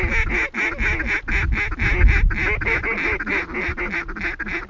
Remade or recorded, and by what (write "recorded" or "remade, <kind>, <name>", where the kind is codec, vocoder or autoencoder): recorded